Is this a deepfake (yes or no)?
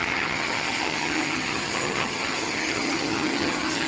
yes